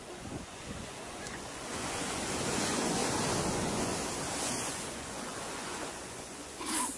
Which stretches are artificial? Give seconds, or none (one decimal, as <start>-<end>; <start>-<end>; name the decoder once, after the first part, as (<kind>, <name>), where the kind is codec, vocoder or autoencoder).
0.0-3.0 (vocoder, Vocos); 3.5-3.9; 4.4-7.0

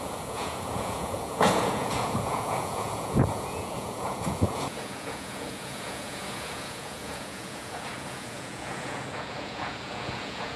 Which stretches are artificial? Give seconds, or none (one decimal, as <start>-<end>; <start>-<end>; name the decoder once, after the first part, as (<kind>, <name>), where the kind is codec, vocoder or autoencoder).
0.0-10.6 (vocoder, Vocos)

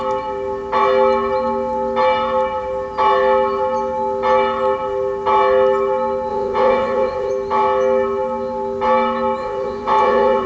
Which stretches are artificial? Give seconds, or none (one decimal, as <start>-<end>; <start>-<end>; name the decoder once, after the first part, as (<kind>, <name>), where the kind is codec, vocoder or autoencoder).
6.3-7.3 (vocoder, Vocos); 9.4-10.5

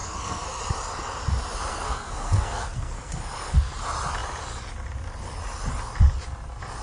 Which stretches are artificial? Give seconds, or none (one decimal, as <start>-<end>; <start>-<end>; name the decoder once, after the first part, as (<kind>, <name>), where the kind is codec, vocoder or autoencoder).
0.0-0.6 (codec, SNAC); 1.7-3.7

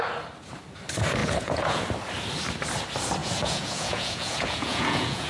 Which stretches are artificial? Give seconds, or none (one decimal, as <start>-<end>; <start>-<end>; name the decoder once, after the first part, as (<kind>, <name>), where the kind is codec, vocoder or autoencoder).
1.2-1.8 (vocoder, Vocos); 3.2-5.3

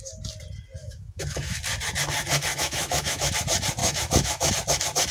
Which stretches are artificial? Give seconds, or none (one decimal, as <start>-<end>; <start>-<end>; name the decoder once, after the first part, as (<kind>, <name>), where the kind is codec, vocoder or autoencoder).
0.8-1.6 (autoencoder, DAC-VAE); 2.5-3.3; 3.8-4.5

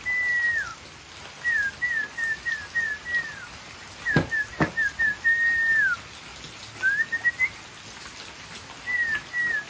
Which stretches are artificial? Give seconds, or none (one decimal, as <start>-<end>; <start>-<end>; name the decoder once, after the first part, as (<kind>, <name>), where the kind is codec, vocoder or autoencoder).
none

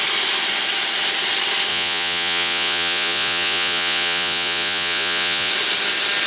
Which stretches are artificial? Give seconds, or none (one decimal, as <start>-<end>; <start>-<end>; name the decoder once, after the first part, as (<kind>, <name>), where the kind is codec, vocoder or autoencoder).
1.7-5.5 (vocoder, Vocos)